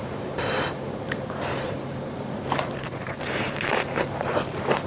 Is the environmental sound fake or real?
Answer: fake